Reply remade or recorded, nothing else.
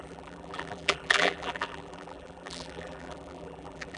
remade